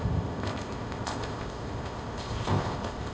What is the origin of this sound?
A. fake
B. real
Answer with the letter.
A